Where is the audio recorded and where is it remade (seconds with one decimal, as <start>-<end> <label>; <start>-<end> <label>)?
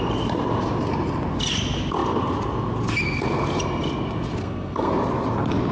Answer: 0.0-4.4 recorded; 4.4-4.9 remade; 4.9-5.7 recorded